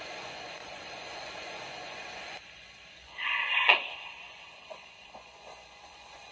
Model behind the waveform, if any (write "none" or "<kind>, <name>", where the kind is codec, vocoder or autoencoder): vocoder, Vocos